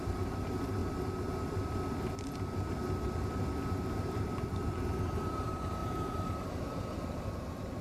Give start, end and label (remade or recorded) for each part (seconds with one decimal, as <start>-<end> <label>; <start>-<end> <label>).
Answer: 0.0-0.8 remade; 0.8-3.8 recorded; 3.8-7.8 remade